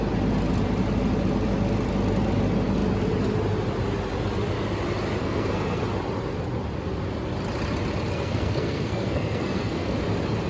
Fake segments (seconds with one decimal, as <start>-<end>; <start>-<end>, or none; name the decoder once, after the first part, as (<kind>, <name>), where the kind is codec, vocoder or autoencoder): 5.2-5.8 (codec, SNAC); 8.1-10.0